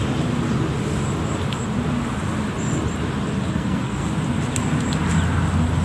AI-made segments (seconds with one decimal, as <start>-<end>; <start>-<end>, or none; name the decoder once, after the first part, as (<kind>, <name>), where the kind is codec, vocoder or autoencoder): 3.5-4.1 (codec, SNAC)